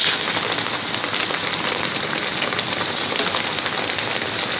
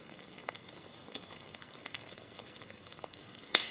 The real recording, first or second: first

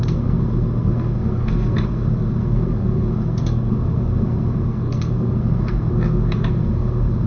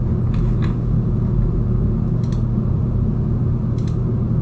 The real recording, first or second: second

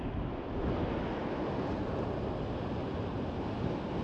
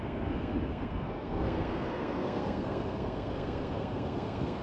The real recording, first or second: first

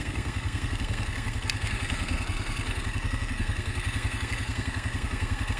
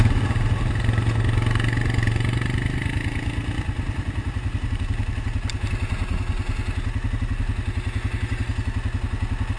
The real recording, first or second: second